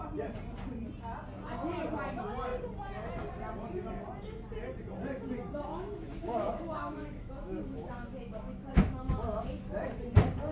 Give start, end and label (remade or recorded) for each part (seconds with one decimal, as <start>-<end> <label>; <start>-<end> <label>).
0.0-5.7 recorded; 5.7-9.9 remade; 9.9-10.5 recorded